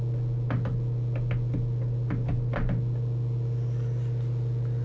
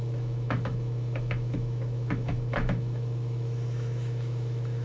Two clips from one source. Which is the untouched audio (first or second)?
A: first